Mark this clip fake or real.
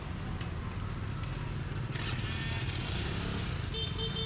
real